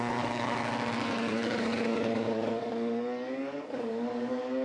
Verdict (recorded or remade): remade